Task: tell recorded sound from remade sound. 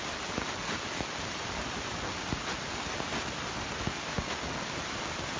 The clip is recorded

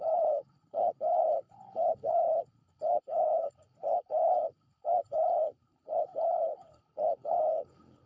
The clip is remade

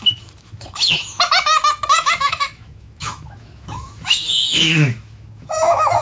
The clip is remade